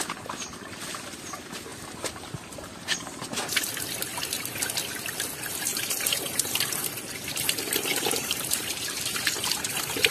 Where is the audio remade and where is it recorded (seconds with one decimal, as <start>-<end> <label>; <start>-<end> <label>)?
0.0-5.7 recorded; 5.7-7.0 remade; 7.0-7.9 recorded; 7.9-10.1 remade